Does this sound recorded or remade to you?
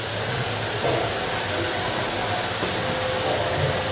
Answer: recorded